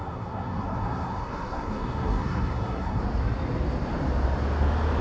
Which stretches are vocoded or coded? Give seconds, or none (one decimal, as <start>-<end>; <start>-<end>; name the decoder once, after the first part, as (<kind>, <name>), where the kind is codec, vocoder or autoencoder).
0.0-3.0 (codec, SNAC)